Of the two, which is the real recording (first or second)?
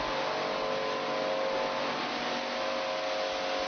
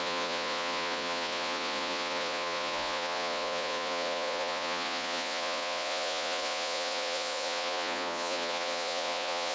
first